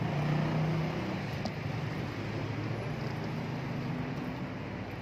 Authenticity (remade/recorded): recorded